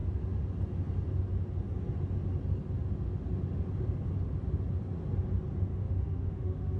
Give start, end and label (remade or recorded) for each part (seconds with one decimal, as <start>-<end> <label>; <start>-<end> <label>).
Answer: 0.0-5.7 recorded; 5.7-6.8 remade